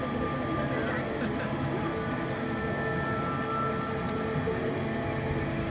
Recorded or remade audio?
recorded